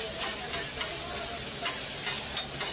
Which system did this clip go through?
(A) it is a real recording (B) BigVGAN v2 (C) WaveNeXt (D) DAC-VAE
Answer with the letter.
A